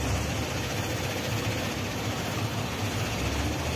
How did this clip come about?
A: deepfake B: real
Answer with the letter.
B